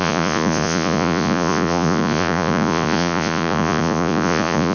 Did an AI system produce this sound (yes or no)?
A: yes